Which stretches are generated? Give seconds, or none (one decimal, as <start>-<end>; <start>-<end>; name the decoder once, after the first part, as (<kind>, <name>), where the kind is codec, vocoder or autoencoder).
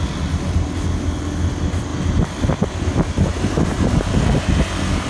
3.3-3.9 (vocoder, BigVGAN v2)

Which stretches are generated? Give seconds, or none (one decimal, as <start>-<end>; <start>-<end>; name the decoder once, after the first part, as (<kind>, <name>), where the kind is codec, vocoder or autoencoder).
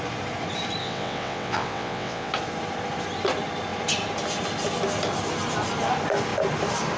0.8-2.3 (vocoder, WaveNeXt)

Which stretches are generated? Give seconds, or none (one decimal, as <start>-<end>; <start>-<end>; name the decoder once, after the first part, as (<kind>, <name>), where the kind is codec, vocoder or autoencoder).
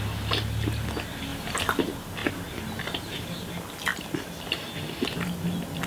1.3-1.8 (vocoder, BigVGAN v2)